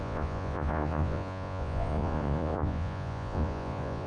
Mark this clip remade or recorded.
remade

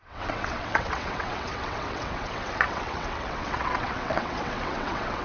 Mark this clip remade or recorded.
remade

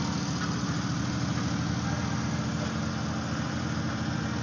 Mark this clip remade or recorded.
recorded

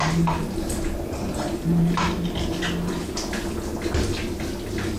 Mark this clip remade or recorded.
recorded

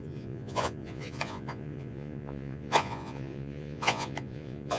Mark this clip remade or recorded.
remade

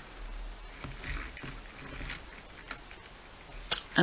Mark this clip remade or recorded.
recorded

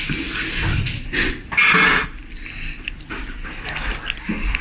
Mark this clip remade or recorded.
recorded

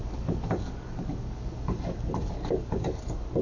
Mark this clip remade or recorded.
remade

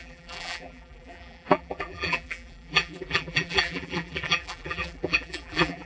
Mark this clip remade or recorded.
remade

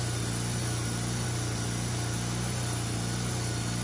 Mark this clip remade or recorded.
recorded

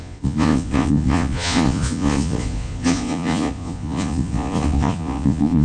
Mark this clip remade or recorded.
remade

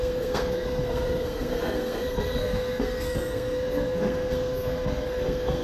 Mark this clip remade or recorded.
remade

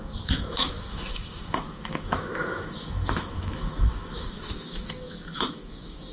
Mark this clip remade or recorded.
remade